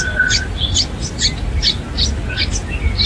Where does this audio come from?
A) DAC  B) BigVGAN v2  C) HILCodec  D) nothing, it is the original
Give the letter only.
D